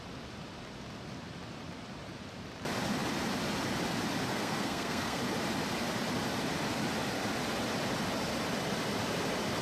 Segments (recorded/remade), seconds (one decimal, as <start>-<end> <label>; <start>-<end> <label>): 0.0-4.3 recorded; 4.3-5.2 remade; 5.2-9.6 recorded